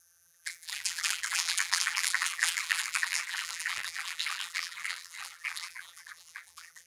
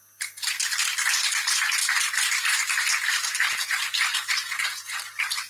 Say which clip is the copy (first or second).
first